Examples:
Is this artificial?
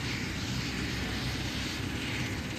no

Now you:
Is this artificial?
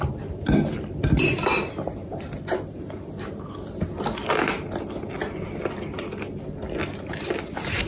no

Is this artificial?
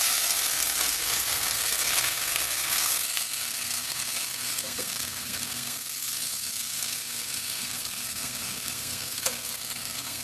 yes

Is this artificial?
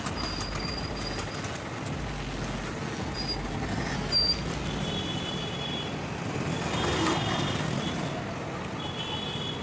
no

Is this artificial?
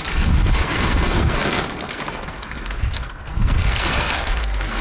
yes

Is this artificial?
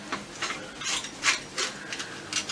no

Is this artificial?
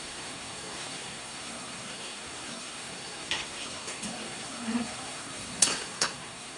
yes